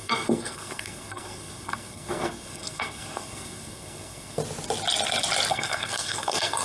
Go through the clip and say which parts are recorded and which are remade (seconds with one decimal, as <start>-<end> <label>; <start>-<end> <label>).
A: 0.0-4.4 remade; 4.4-5.5 recorded; 5.5-6.6 remade